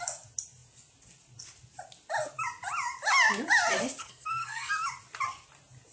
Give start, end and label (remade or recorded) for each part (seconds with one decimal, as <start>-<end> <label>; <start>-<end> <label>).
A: 0.0-4.0 recorded; 4.0-4.7 remade; 4.7-5.9 recorded